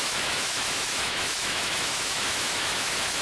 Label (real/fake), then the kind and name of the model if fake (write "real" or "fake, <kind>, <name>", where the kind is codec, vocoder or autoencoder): fake, autoencoder, DAC-VAE